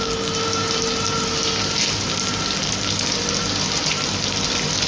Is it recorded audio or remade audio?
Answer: recorded